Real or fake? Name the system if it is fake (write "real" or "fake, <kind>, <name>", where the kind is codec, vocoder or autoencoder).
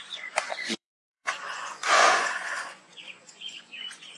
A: fake, vocoder, Vocos